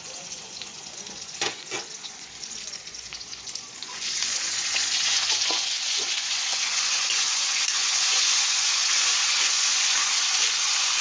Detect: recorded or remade remade